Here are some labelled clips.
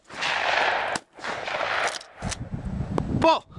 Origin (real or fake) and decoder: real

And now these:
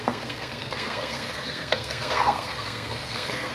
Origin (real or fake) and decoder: fake, codec, SNAC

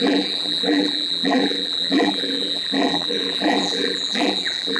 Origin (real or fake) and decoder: fake, vocoder, BigVGAN v2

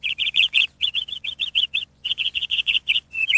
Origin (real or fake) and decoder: fake, vocoder, Vocos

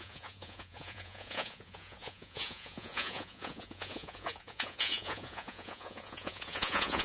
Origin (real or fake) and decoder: fake, vocoder, Vocos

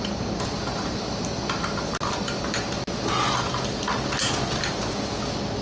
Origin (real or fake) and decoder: real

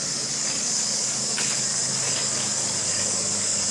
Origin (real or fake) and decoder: fake, codec, DAC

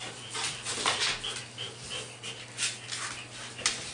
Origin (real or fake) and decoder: real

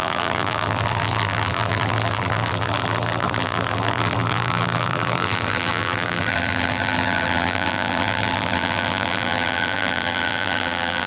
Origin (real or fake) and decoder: fake, vocoder, BigVGAN v2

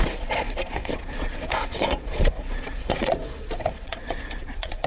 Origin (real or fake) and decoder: fake, vocoder, Vocos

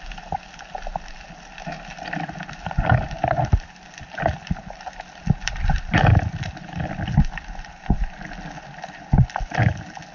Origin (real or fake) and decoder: real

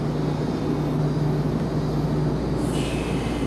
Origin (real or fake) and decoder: real